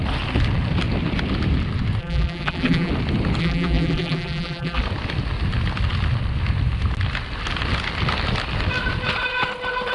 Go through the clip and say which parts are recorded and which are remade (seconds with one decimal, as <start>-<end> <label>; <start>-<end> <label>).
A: 0.0-2.0 recorded; 2.0-2.9 remade; 2.9-3.4 recorded; 3.4-4.8 remade; 4.8-9.9 recorded

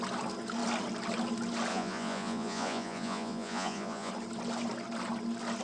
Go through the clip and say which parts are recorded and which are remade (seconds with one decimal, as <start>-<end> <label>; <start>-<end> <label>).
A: 0.0-1.7 recorded; 1.7-4.1 remade; 4.1-5.6 recorded

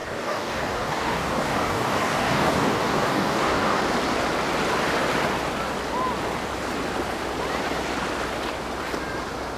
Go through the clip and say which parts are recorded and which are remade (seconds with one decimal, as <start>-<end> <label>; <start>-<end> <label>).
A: 0.0-3.8 remade; 3.8-9.6 recorded

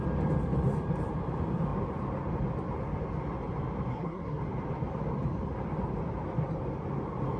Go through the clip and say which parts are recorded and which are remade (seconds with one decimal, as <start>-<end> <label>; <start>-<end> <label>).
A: 0.0-3.9 recorded; 3.9-4.4 remade; 4.4-7.4 recorded